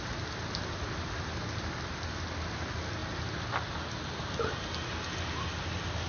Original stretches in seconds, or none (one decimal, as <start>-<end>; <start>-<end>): 0.0-6.1